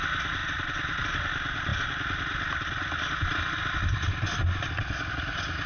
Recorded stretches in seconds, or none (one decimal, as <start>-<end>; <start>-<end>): 0.0-5.7